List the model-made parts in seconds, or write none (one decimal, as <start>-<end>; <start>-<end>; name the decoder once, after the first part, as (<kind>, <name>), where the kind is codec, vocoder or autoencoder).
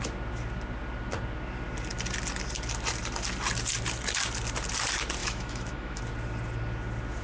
5.2-6.0 (autoencoder, DAC-VAE)